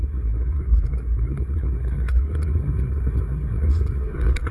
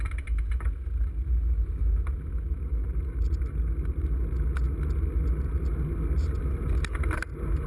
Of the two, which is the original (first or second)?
second